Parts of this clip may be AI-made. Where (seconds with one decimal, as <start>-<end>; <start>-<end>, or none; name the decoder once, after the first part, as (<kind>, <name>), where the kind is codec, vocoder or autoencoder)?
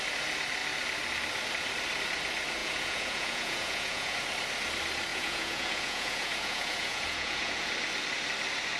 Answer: 2.6-4.1 (vocoder, Vocos); 5.1-7.7